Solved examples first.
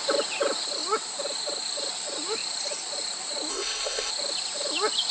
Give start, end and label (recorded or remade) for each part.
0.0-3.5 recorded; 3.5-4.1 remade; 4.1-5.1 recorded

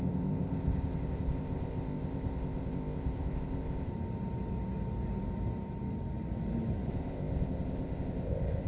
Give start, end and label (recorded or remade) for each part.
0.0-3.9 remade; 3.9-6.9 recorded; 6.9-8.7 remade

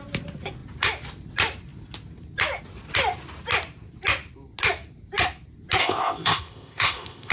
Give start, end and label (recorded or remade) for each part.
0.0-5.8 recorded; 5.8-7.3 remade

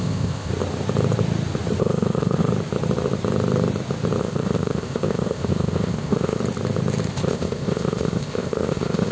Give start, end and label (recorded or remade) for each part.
0.0-0.5 remade; 0.5-1.8 recorded; 1.8-2.5 remade; 2.5-4.2 recorded; 4.2-6.4 remade; 6.4-7.1 recorded; 7.1-9.1 remade